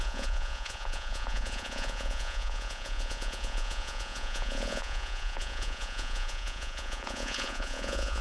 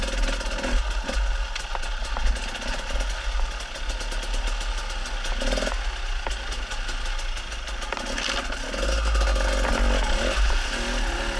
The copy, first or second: first